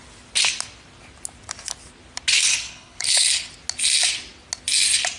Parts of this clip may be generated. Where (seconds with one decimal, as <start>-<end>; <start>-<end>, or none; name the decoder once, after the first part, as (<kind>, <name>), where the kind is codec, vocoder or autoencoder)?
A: 2.4-3.5 (codec, HILCodec)